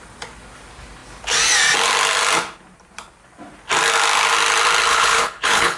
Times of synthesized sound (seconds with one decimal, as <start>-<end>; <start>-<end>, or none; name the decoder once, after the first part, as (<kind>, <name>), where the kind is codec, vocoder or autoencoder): 4.9-5.8 (codec, HILCodec)